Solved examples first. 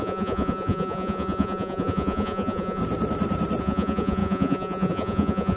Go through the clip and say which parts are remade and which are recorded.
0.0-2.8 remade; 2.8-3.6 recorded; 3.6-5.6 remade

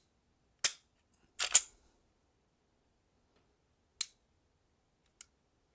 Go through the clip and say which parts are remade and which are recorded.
0.0-5.7 recorded